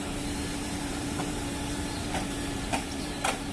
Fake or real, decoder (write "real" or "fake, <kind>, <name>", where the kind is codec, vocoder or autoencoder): fake, vocoder, BigVGAN v2